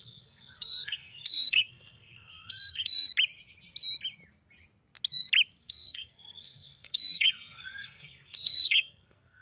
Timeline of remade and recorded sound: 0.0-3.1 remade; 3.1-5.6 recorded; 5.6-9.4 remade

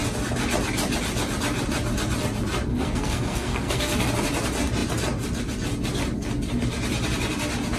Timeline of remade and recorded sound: 0.0-2.7 recorded; 2.7-4.1 remade; 4.1-7.8 recorded

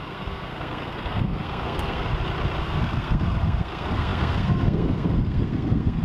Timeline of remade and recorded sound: 0.0-2.1 remade; 2.1-2.6 recorded; 2.6-6.0 remade